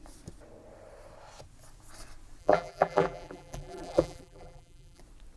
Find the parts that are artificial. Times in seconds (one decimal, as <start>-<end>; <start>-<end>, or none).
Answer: 2.4-5.0